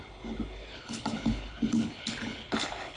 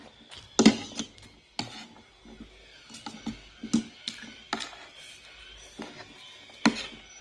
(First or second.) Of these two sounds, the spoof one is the first